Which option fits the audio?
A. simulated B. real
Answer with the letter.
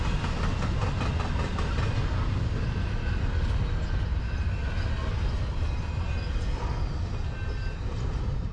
B